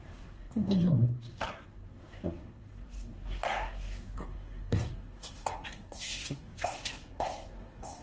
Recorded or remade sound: remade